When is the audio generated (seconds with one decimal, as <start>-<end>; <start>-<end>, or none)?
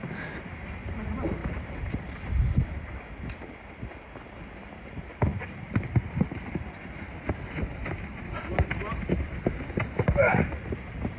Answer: none